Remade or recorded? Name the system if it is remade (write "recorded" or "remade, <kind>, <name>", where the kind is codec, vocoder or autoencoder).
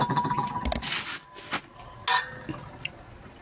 recorded